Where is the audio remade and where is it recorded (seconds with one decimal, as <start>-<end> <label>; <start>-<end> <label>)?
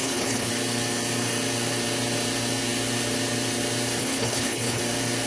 0.0-0.5 remade; 0.5-4.0 recorded; 4.0-4.8 remade; 4.8-5.3 recorded